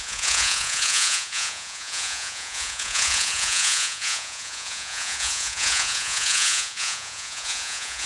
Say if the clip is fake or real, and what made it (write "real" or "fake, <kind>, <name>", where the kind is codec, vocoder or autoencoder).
fake, vocoder, Vocos